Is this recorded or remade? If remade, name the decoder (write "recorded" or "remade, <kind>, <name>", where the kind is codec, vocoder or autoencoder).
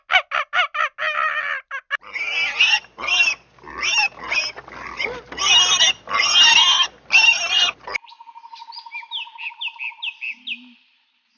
recorded